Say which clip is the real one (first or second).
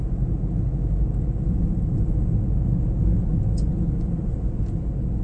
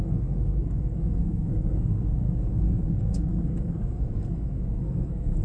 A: first